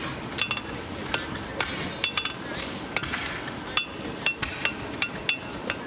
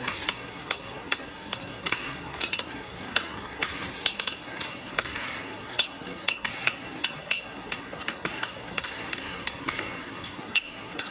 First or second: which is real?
first